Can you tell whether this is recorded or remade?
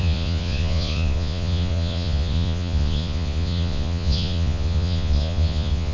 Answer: remade